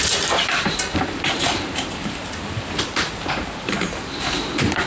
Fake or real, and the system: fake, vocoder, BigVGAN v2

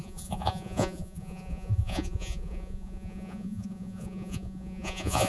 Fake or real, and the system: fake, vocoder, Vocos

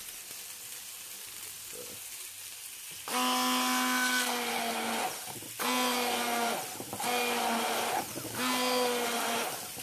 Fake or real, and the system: real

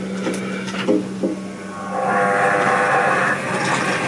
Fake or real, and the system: real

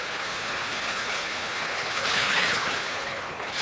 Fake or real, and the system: fake, codec, HILCodec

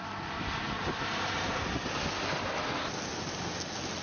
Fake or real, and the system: real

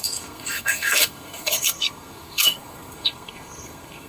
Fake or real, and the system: fake, codec, SNAC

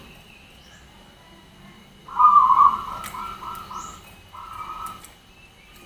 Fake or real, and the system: real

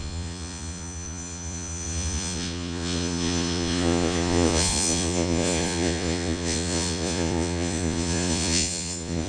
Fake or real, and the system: fake, vocoder, Vocos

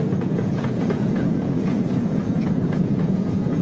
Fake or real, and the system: fake, vocoder, Vocos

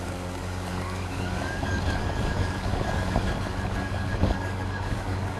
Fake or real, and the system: fake, codec, DAC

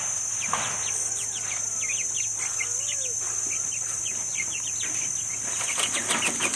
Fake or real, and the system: real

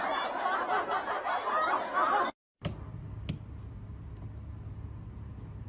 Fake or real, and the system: real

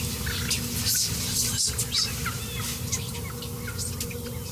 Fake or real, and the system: real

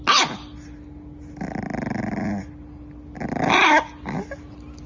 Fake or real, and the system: real